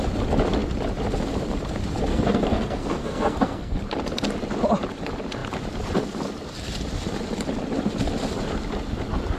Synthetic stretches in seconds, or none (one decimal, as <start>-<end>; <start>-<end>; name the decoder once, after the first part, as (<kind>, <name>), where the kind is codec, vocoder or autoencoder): 2.1-3.8 (codec, SNAC)